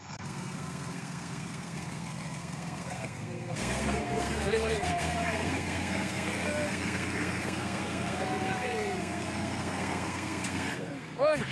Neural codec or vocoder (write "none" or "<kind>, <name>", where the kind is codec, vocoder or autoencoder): codec, SNAC